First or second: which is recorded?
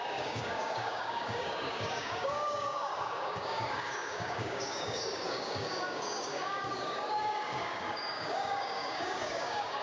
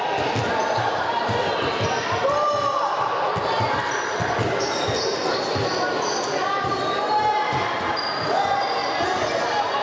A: second